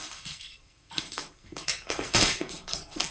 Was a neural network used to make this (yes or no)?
yes